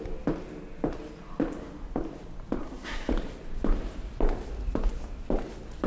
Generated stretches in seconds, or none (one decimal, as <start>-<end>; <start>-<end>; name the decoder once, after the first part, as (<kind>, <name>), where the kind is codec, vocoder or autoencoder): 2.6-3.1 (codec, SNAC)